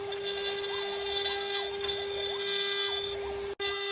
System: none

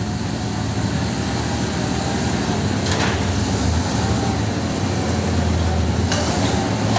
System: none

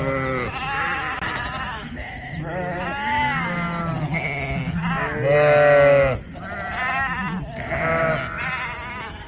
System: none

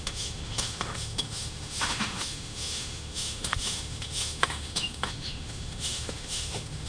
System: autoencoder, DAC-VAE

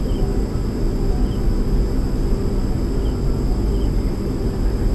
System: none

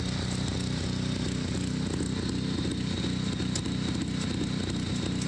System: none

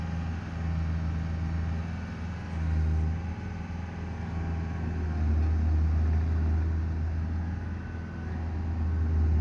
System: none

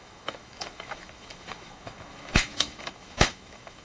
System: autoencoder, DAC-VAE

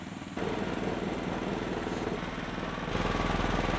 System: none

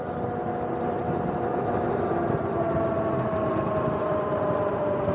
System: none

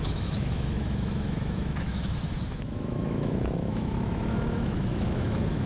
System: autoencoder, DAC-VAE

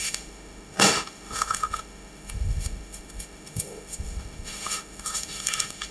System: autoencoder, DAC-VAE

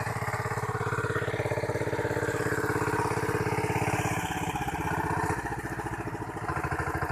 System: none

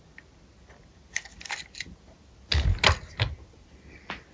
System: none